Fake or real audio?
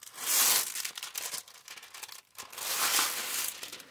real